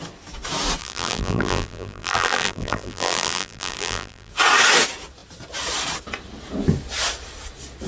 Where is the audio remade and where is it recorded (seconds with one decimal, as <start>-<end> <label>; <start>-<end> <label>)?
0.0-0.8 recorded; 0.8-4.3 remade; 4.3-7.9 recorded